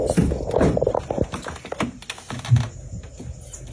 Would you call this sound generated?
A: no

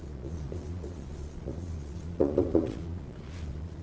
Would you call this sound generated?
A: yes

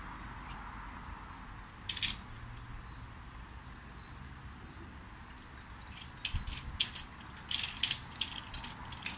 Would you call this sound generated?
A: no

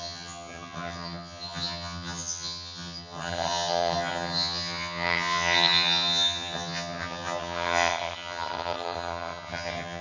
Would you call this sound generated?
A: yes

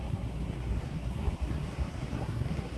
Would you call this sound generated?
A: yes